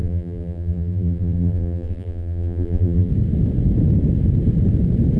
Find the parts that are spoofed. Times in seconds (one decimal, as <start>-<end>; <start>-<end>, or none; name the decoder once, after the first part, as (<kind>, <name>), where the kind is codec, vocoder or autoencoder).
0.0-3.1 (vocoder, BigVGAN v2)